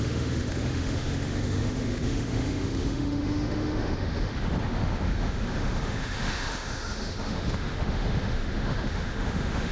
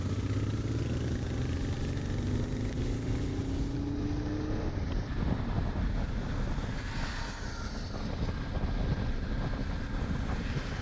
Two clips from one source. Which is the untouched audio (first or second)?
second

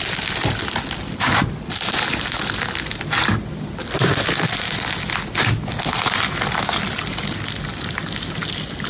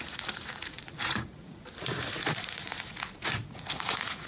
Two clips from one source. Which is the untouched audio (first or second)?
first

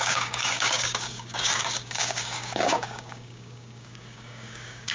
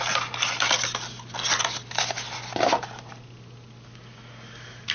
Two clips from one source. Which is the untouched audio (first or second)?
second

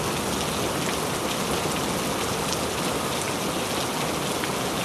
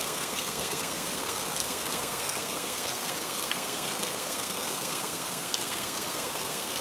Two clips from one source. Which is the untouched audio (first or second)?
first